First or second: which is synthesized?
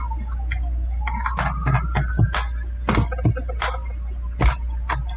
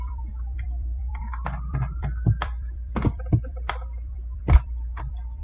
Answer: second